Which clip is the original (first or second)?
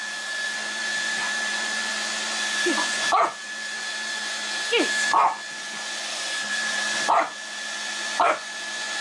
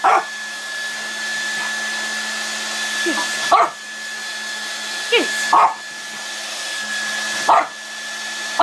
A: second